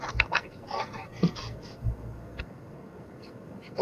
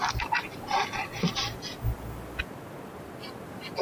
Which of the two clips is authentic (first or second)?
second